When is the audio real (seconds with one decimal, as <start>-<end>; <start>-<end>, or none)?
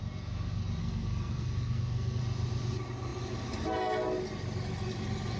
0.0-0.8; 2.2-5.4